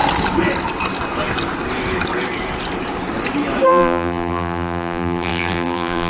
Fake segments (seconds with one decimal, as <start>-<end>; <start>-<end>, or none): 3.7-6.1